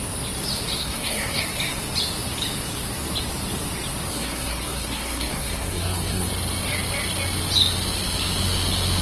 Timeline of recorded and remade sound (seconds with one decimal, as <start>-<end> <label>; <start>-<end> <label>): 0.0-0.8 recorded; 0.8-1.4 remade; 1.4-4.1 recorded; 4.1-6.3 remade; 6.3-9.0 recorded